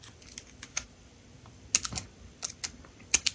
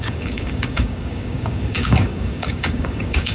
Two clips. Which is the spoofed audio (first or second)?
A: second